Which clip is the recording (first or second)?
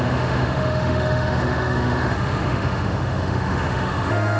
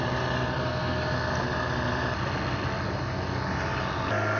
second